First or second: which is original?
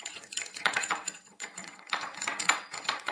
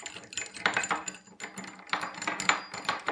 second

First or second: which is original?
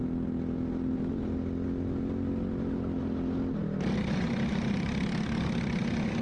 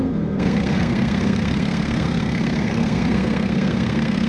first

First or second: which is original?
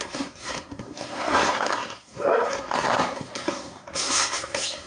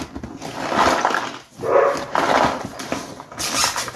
second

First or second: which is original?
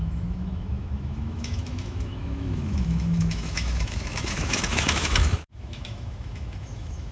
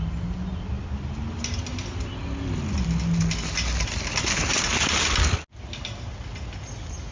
second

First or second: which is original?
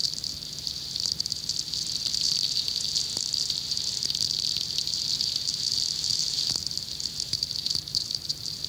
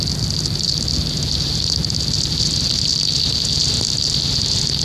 second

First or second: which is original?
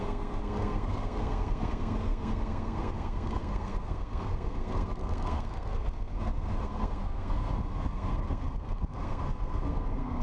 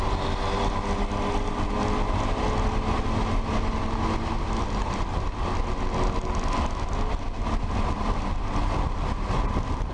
second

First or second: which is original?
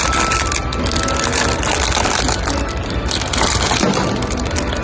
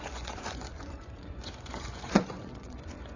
first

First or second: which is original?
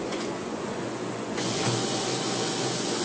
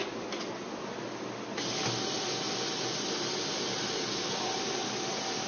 second